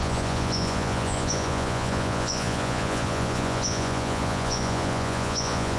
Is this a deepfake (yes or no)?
yes